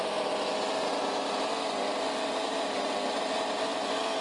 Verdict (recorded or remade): recorded